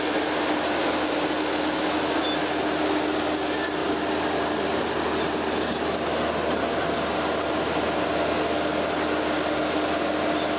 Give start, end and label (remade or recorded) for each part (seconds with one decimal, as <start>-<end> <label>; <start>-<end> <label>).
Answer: 0.0-10.6 recorded